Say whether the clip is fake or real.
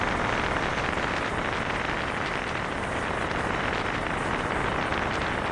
fake